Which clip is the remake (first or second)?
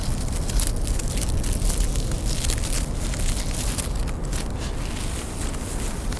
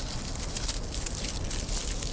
second